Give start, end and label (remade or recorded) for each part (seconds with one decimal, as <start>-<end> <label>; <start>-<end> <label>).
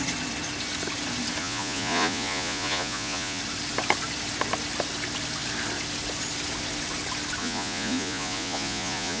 0.0-1.4 recorded; 1.4-3.4 remade; 3.4-7.4 recorded; 7.4-9.2 remade